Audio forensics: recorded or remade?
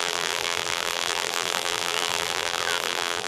remade